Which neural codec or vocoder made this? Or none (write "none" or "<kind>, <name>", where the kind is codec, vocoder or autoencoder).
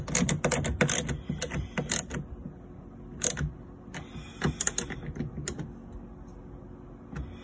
none